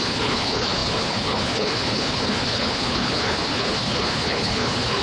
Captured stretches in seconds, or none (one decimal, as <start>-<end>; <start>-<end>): none